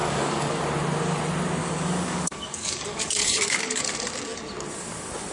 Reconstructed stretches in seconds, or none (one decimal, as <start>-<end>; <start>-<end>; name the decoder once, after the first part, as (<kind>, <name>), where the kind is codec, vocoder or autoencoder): 0.0-0.6 (codec, DAC); 1.6-3.8